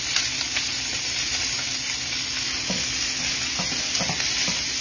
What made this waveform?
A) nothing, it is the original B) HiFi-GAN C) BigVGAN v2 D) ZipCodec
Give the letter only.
A